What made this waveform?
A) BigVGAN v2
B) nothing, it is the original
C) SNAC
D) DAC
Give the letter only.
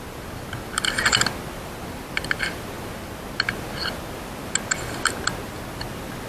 B